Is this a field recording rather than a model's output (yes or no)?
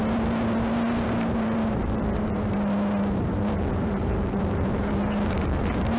no